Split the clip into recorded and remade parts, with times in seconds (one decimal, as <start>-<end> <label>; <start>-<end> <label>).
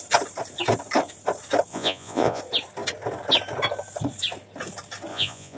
0.0-1.7 recorded; 1.7-2.4 remade; 2.4-5.1 recorded; 5.1-5.6 remade